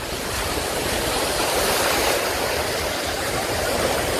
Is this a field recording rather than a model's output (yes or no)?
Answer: no